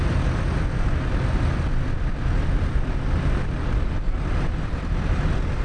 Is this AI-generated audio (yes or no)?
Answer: no